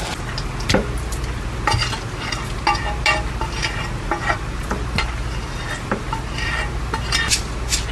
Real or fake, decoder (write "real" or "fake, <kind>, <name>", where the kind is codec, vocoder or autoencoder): real